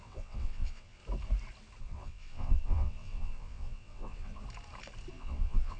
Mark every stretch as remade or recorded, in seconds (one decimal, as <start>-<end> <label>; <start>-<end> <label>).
0.0-1.0 remade; 1.0-1.8 recorded; 1.8-4.4 remade; 4.4-5.1 recorded; 5.1-5.8 remade